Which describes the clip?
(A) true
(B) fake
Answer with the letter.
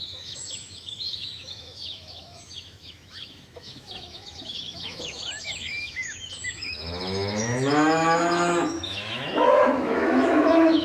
B